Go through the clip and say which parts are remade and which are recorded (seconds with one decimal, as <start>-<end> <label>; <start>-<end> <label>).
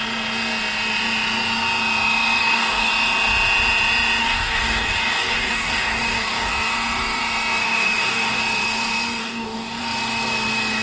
0.0-2.4 recorded; 2.4-2.9 remade; 2.9-4.2 recorded; 4.2-6.5 remade; 6.5-7.6 recorded; 7.6-8.4 remade; 8.4-9.2 recorded; 9.2-9.8 remade; 9.8-10.8 recorded